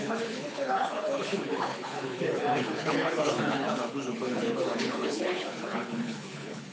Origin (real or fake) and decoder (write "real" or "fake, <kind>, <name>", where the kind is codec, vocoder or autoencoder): fake, codec, HILCodec